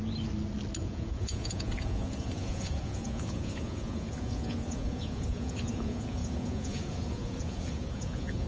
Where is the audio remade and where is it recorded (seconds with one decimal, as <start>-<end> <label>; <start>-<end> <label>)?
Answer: 0.0-0.8 recorded; 0.8-8.5 remade